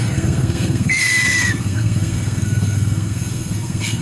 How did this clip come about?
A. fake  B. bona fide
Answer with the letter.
A